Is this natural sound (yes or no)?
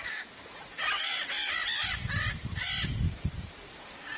yes